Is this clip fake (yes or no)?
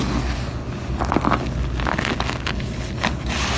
no